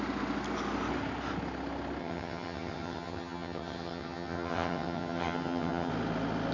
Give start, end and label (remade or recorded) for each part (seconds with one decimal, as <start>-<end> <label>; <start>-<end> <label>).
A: 0.0-2.0 recorded; 2.0-5.9 remade; 5.9-6.5 recorded